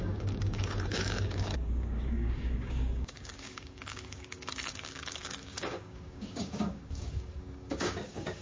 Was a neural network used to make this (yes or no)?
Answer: yes